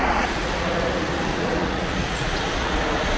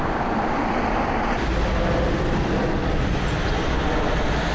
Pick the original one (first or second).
second